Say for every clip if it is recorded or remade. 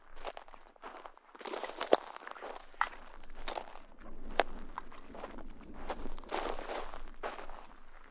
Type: recorded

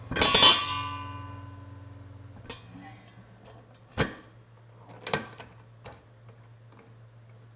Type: recorded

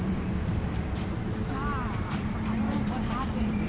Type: remade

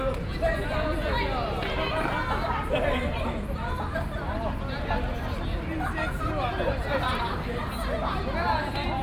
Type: recorded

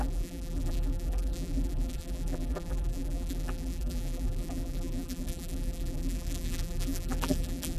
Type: remade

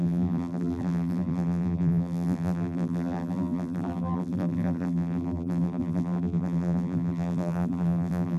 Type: remade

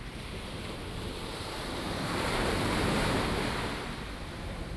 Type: remade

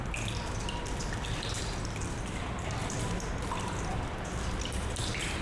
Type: remade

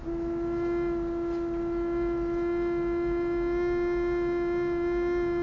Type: recorded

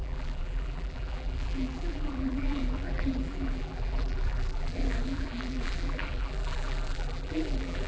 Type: remade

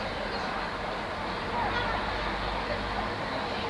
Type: recorded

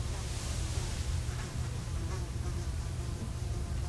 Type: remade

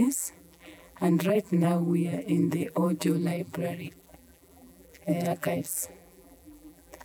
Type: remade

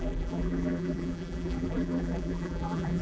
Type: remade